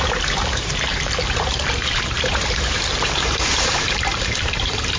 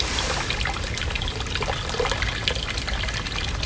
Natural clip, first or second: second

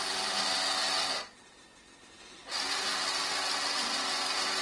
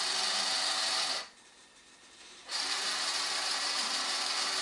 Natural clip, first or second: first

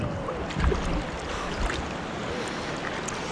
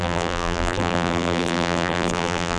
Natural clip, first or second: first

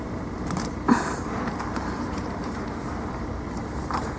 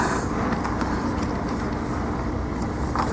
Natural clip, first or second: second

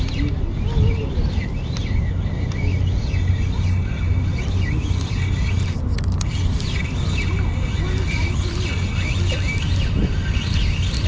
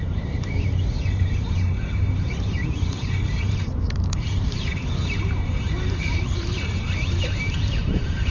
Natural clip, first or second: first